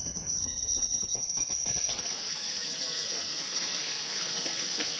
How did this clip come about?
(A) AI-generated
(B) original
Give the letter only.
A